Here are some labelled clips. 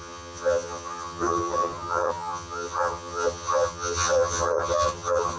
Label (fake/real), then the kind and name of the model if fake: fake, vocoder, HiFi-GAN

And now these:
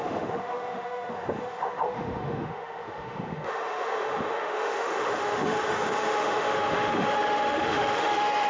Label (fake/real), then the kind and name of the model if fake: fake, autoencoder, DAC-VAE